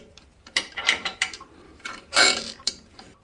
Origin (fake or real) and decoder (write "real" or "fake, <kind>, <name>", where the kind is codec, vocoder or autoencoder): fake, vocoder, BigVGAN v2